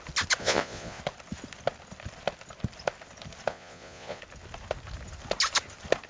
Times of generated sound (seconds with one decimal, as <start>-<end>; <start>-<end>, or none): 0.4-1.0; 3.5-4.2